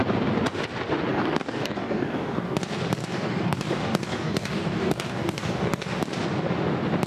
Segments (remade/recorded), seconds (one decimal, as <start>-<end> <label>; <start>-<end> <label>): 0.0-1.1 recorded; 1.1-2.6 remade; 2.6-3.0 recorded; 3.0-6.0 remade; 6.0-7.1 recorded